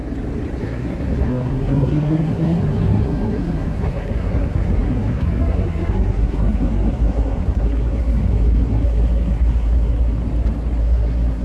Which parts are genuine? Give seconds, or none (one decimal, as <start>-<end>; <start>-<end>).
0.0-0.6; 10.2-10.8